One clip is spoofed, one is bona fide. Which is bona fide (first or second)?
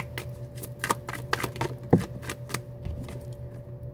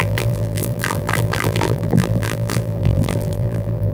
first